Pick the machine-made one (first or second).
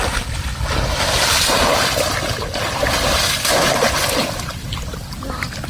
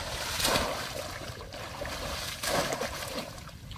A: second